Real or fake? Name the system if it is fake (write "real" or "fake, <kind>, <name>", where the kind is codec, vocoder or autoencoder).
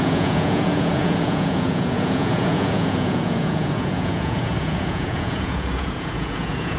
fake, vocoder, Vocos